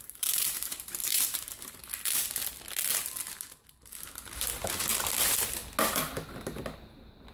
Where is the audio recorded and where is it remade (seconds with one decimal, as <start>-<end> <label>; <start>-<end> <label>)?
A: 0.0-1.8 remade; 1.8-4.6 recorded; 4.6-5.6 remade; 5.6-7.3 recorded